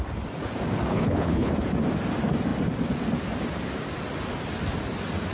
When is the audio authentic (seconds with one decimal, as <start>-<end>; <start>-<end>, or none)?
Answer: 0.0-0.9; 1.5-5.3